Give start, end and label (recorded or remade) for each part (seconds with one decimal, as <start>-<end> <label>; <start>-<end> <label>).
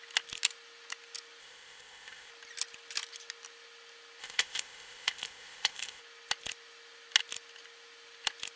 0.0-1.4 recorded; 1.4-2.3 remade; 2.3-4.2 recorded; 4.2-6.0 remade; 6.0-8.6 recorded